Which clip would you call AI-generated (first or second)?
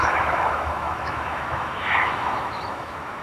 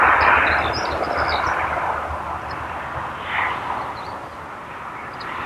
first